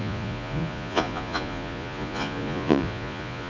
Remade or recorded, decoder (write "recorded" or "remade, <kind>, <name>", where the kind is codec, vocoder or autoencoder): remade, vocoder, Vocos